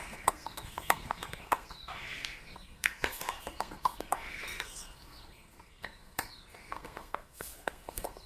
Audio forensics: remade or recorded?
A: remade